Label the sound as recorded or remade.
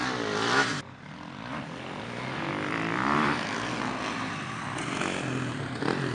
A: recorded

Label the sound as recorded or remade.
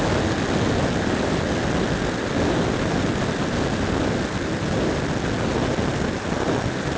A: recorded